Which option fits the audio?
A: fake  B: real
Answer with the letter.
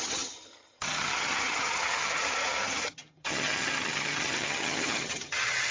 A